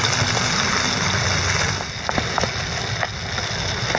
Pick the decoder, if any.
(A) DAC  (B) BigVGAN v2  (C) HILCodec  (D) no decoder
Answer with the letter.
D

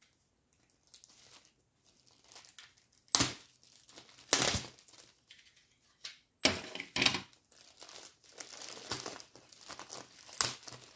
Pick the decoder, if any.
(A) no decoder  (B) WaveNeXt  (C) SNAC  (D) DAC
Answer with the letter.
A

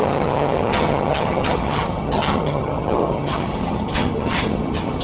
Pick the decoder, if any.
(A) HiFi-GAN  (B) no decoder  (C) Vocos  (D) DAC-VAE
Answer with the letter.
A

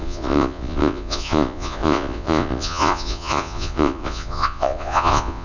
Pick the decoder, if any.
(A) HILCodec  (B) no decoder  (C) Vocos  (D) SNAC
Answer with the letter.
C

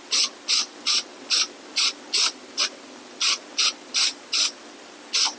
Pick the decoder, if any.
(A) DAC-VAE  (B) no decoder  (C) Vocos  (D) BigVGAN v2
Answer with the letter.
B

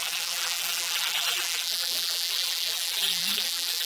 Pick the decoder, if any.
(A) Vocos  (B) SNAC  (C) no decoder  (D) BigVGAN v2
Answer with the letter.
D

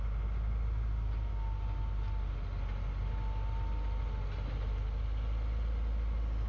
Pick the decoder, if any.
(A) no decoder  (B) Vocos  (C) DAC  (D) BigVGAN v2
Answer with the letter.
A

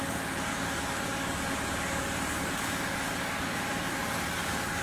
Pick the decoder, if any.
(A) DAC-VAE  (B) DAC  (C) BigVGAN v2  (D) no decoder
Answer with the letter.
B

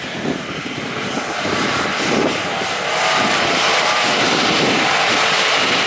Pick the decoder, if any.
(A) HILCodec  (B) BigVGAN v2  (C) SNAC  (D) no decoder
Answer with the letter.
B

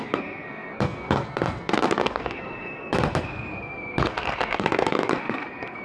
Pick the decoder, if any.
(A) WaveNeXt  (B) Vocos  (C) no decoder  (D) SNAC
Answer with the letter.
D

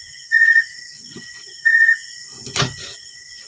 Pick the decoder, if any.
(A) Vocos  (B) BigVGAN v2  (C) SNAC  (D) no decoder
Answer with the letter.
A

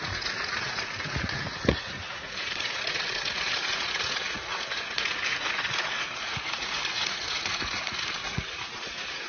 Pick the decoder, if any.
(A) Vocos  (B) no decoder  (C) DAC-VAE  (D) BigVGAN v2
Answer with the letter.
A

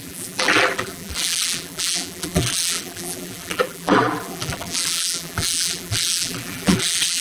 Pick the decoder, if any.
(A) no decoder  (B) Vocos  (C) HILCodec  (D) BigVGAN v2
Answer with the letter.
D